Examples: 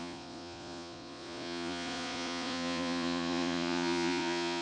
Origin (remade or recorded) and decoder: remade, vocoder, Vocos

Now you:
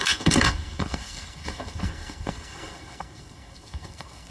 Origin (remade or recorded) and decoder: remade, codec, SNAC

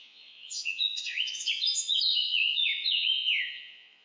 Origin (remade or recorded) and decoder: remade, vocoder, Vocos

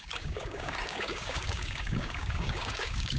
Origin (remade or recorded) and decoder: remade, codec, DAC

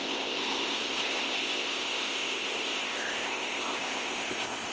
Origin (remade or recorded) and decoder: remade, codec, ZipCodec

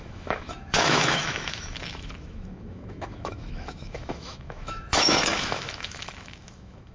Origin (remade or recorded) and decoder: remade, autoencoder, DAC-VAE